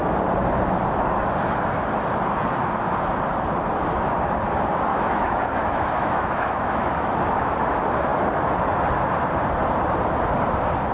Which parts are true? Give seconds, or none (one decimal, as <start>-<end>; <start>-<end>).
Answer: 0.0-4.9; 7.1-10.9